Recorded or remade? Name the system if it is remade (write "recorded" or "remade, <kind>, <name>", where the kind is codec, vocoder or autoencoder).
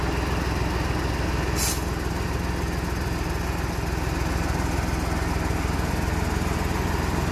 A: recorded